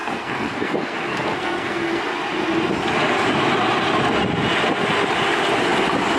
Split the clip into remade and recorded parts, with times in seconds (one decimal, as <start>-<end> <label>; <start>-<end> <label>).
0.0-2.0 remade; 2.0-6.2 recorded